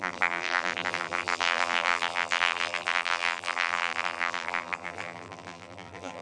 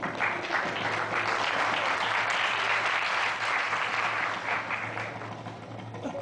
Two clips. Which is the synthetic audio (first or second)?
first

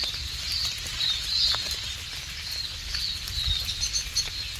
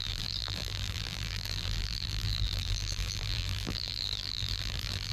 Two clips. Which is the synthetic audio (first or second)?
second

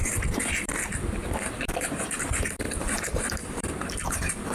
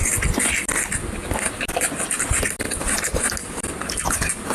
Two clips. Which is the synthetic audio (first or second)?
first